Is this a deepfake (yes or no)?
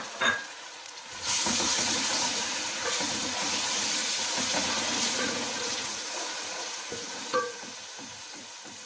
yes